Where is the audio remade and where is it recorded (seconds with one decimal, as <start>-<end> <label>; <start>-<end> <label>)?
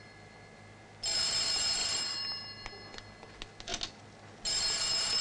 0.0-1.8 recorded; 1.8-2.4 remade; 2.4-5.2 recorded